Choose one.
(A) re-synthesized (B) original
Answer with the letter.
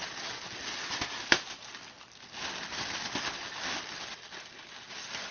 B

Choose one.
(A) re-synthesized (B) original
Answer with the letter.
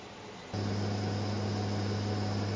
B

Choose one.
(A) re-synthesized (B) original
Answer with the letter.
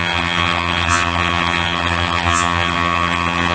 A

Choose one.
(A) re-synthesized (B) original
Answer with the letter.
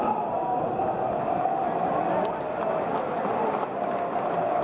B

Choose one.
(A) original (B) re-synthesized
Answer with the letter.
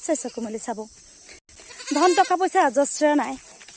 A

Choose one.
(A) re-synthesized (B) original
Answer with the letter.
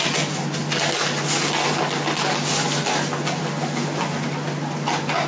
B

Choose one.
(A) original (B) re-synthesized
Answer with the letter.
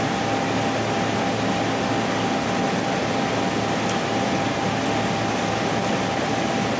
A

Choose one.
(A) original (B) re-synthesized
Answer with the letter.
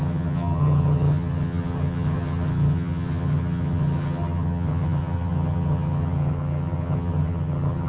B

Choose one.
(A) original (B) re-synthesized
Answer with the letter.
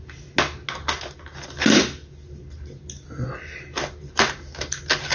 A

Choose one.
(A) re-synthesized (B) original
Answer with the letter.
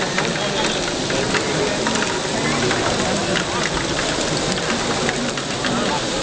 B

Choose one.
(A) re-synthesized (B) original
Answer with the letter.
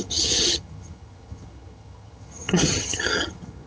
A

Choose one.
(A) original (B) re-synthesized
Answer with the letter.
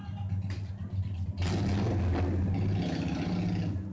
A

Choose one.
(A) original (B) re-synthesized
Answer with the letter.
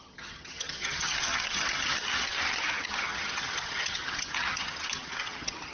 B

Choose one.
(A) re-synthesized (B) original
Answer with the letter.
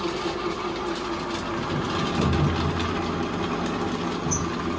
B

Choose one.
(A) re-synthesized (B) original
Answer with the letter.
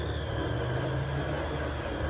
B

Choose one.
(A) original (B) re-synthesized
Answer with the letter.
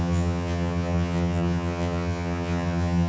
B